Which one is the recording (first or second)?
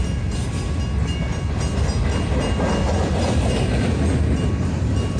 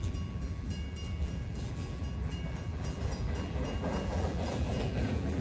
first